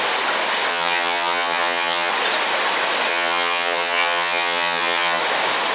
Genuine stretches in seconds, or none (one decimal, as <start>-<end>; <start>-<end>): 0.0-0.7; 2.1-3.1; 5.2-5.7